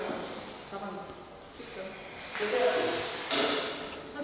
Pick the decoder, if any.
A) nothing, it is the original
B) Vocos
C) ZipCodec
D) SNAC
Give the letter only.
A